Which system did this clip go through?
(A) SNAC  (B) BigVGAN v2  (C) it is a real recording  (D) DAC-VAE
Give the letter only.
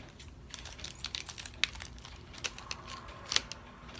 C